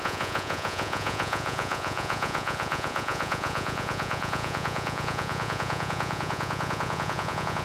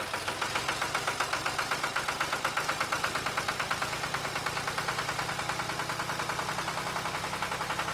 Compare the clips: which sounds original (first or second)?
second